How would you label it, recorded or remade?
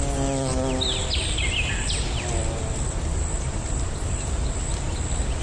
recorded